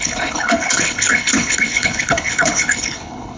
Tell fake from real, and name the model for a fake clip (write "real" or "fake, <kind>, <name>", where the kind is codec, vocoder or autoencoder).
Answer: fake, codec, HILCodec